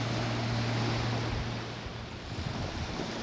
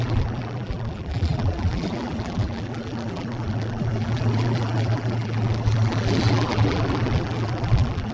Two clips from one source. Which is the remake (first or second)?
second